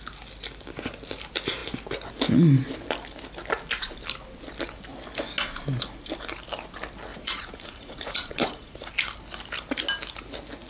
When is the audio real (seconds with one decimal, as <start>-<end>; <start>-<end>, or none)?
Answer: 0.0-7.1; 8.9-10.7